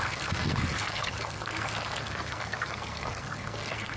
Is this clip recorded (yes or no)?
no